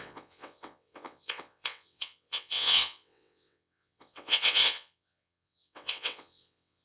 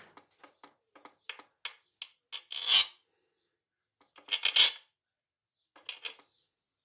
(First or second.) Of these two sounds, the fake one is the first